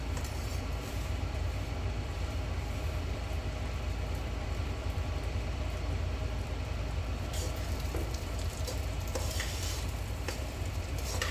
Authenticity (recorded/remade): remade